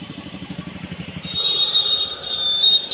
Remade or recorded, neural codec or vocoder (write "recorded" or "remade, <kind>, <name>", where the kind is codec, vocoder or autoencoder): remade, vocoder, BigVGAN v2